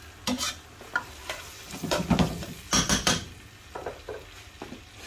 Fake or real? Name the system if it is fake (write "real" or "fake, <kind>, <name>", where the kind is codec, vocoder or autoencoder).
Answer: real